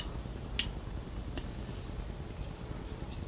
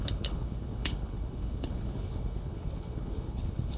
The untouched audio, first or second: first